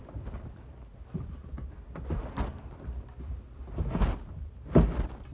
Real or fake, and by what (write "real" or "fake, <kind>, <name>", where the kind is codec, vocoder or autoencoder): real